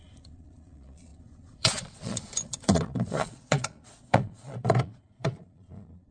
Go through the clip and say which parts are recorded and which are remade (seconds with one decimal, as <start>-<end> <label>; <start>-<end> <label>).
0.0-6.1 remade